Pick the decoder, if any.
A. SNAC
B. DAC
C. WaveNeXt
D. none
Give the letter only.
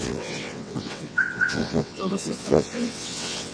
C